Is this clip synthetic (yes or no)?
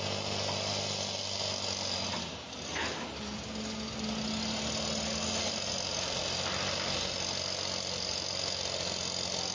no